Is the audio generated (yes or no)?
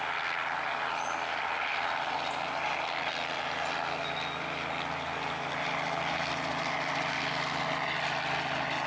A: no